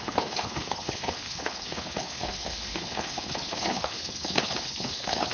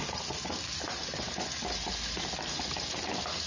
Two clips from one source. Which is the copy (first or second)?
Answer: first